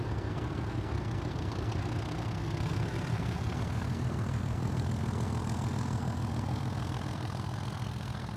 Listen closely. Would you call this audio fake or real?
fake